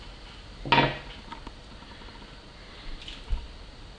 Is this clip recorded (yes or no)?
yes